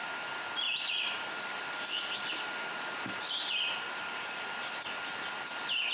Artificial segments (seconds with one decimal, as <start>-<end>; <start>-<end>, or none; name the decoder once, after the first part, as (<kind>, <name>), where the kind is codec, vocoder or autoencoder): 0.5-4.0 (vocoder, BigVGAN v2)